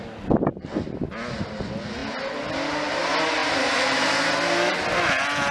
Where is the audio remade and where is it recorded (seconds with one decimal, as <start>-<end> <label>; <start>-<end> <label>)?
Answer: 0.0-5.5 recorded